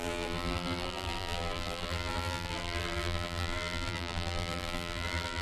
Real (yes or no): no